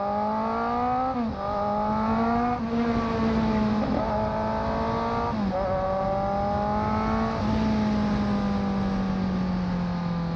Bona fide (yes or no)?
yes